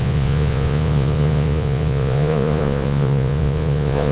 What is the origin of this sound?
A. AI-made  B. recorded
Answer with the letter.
A